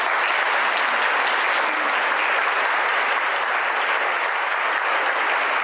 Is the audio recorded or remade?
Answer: recorded